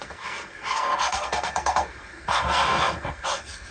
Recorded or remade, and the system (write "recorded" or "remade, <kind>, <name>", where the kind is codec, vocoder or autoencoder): remade, codec, SNAC